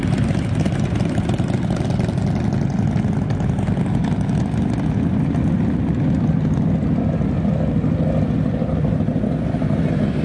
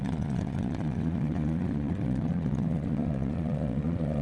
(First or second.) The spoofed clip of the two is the second